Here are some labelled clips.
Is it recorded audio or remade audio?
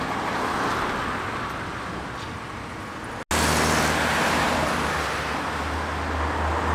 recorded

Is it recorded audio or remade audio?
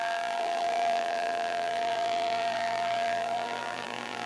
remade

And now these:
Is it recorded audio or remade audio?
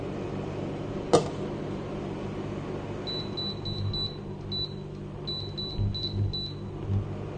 recorded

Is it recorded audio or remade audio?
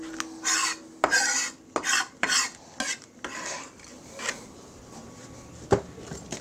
recorded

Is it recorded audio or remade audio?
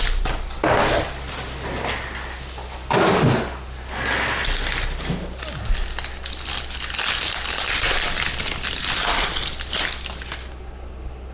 recorded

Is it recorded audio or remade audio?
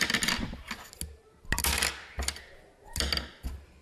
recorded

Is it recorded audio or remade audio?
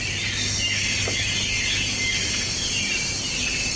recorded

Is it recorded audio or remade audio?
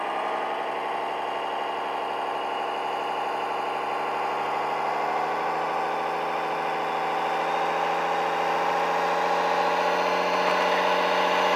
recorded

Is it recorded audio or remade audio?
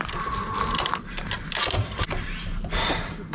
recorded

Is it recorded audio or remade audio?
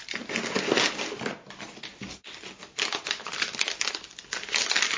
recorded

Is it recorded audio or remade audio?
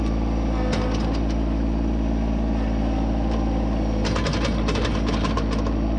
recorded